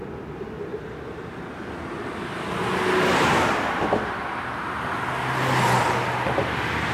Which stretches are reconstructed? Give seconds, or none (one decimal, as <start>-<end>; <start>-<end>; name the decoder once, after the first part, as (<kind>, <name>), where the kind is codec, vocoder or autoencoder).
none